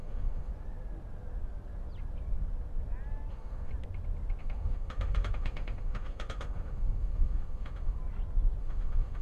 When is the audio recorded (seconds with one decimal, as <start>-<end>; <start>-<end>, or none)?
0.5-3.3; 3.7-4.4; 8.0-8.6

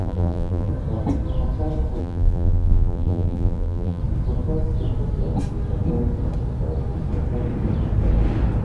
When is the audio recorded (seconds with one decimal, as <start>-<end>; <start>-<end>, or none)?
0.7-2.0; 4.0-8.6